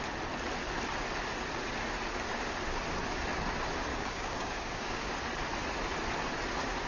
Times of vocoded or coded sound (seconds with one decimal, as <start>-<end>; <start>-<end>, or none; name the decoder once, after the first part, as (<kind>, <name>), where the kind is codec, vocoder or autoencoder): 3.9-5.1 (codec, DAC)